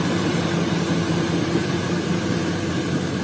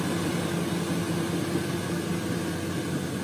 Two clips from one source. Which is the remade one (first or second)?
first